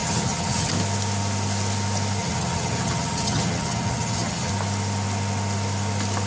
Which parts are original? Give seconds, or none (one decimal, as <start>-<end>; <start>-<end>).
0.7-2.2; 4.5-6.3